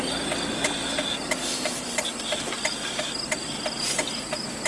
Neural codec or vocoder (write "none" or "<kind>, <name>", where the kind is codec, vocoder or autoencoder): none